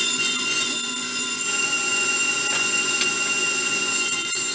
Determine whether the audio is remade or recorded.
remade